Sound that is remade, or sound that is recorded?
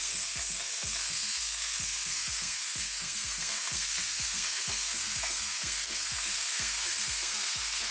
remade